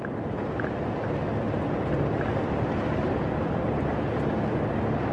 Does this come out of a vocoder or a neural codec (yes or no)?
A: no